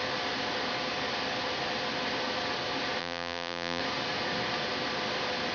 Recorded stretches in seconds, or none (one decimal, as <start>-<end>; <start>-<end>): 0.0-3.0; 3.8-5.5